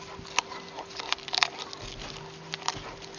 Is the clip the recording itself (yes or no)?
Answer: yes